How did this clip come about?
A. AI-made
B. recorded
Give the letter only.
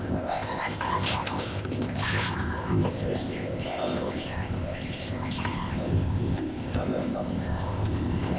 A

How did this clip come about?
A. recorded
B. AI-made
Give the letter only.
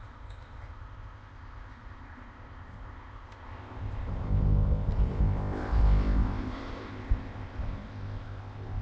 B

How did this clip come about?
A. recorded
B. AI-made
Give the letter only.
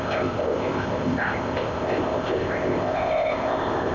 B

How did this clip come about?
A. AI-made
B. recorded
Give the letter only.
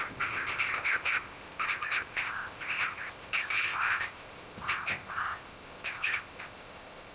A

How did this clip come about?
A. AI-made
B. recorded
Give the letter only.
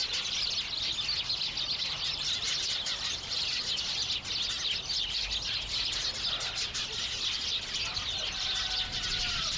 B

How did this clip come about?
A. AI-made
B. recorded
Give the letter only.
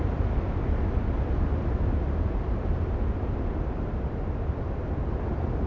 B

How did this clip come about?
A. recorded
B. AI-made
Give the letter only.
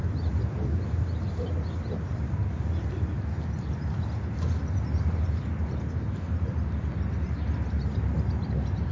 A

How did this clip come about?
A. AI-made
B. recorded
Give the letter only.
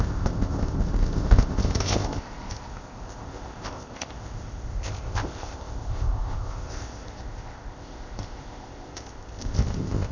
A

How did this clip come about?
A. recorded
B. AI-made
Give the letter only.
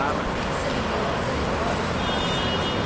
A